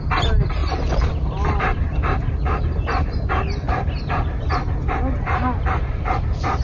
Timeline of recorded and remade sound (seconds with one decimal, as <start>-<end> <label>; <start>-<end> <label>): 0.0-6.6 recorded